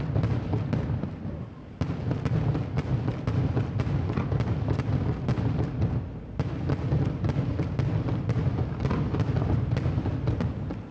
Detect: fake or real real